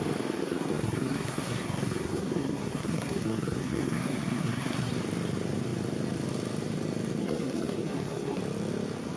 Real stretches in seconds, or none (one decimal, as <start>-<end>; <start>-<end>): 0.0-0.4; 4.9-7.2; 8.4-9.2